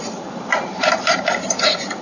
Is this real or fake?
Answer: fake